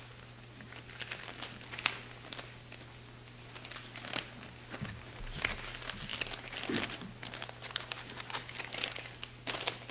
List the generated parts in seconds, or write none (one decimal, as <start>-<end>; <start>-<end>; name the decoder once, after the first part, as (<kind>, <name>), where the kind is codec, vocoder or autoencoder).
none